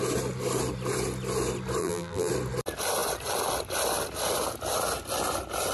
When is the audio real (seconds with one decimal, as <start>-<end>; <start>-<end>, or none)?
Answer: 0.0-1.8; 2.3-5.7